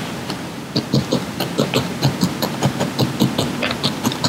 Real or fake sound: real